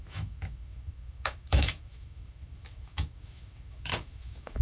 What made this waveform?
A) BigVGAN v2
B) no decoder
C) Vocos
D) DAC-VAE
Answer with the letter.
D